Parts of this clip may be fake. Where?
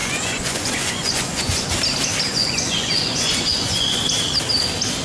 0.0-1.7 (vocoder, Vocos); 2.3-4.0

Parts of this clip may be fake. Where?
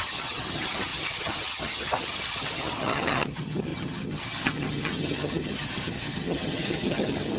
0.0-7.4 (vocoder, HiFi-GAN)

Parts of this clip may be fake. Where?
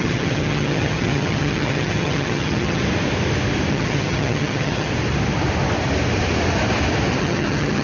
0.0-2.8 (vocoder, HiFi-GAN); 3.7-4.9; 7.2-7.8